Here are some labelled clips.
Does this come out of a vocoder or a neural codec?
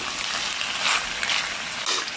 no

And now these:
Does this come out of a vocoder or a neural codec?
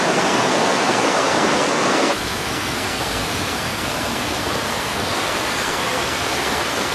yes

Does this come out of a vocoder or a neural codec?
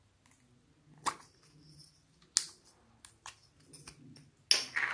no